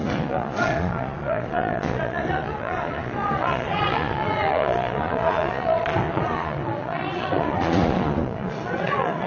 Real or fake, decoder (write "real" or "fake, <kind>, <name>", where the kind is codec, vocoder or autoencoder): fake, vocoder, Vocos